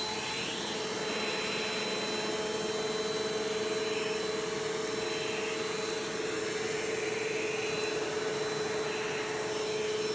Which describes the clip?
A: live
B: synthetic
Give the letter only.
A